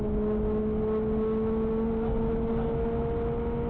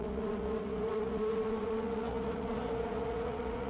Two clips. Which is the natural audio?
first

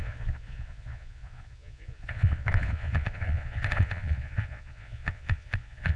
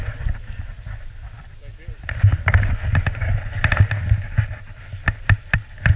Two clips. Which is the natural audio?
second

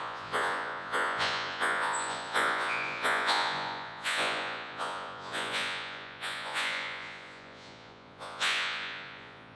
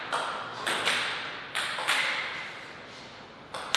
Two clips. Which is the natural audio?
second